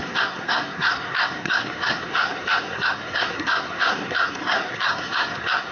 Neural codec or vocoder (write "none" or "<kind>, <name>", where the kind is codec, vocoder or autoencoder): codec, SNAC